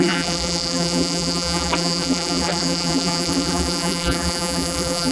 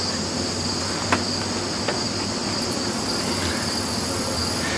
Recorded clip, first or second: second